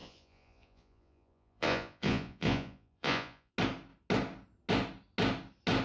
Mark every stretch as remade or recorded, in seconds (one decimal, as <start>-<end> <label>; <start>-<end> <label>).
0.0-3.5 remade; 3.5-5.8 recorded